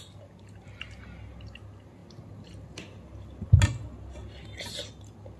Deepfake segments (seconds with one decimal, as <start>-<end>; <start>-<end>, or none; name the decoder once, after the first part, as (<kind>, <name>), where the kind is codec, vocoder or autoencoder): none